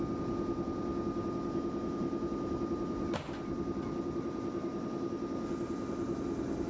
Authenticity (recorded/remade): recorded